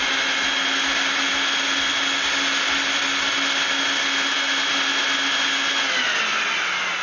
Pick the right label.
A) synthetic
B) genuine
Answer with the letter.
B